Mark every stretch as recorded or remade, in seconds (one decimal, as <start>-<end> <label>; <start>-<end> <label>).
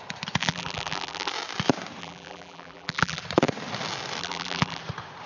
0.0-0.4 recorded; 0.4-1.3 remade; 1.3-2.0 recorded; 2.0-3.2 remade; 3.2-4.2 recorded; 4.2-4.8 remade; 4.8-5.3 recorded